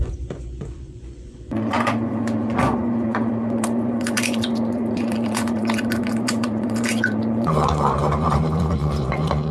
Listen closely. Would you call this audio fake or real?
fake